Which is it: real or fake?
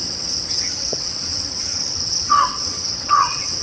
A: fake